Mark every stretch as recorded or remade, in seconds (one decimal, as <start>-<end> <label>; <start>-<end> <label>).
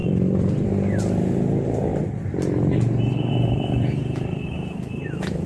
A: 0.0-0.7 remade; 0.7-1.9 recorded; 1.9-5.5 remade